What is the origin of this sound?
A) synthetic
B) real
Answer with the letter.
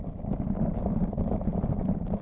B